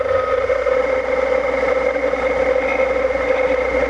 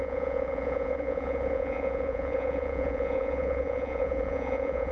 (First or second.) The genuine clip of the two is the first